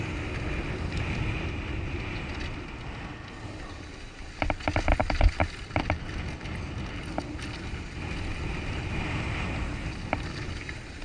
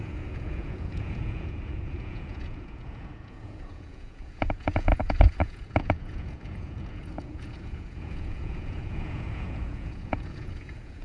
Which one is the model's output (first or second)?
second